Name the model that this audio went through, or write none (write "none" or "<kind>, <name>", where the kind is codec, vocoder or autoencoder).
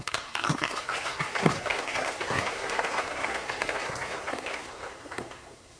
codec, SNAC